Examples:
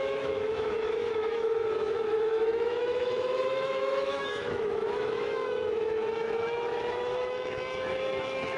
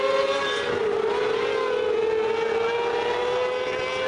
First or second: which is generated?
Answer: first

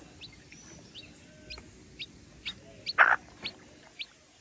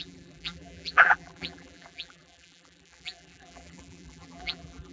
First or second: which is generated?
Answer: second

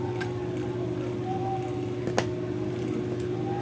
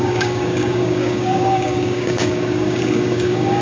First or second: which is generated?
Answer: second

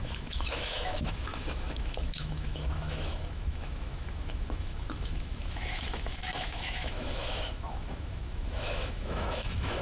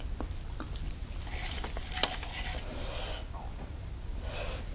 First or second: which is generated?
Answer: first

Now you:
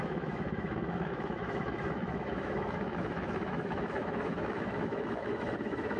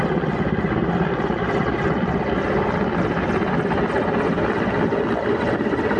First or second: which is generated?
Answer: first